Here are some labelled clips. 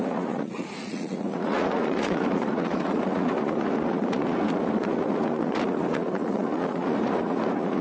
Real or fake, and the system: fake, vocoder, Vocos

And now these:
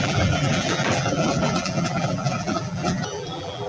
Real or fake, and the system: fake, vocoder, BigVGAN v2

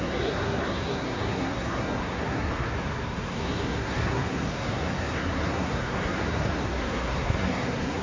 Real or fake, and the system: fake, codec, SNAC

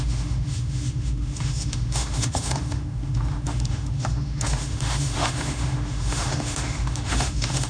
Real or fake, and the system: fake, autoencoder, DAC-VAE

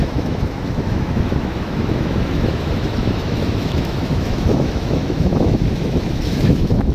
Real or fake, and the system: fake, autoencoder, DAC-VAE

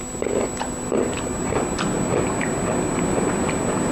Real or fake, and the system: real